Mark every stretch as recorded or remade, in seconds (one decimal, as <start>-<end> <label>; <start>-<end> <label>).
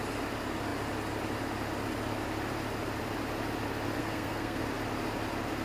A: 0.0-4.0 recorded; 4.0-4.6 remade; 4.6-5.6 recorded